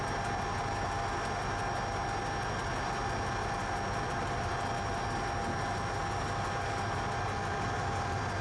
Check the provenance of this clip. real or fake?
real